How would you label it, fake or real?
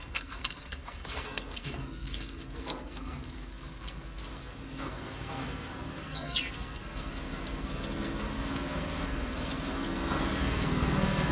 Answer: fake